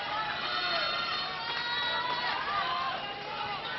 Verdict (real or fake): real